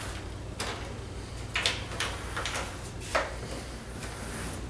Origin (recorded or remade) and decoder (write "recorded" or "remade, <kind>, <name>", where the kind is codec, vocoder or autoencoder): recorded